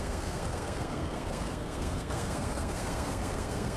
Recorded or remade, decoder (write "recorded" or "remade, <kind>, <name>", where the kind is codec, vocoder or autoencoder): remade, codec, SNAC